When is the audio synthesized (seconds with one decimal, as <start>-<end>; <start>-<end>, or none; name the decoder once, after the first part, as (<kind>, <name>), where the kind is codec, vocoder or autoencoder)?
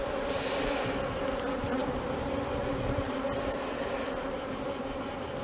none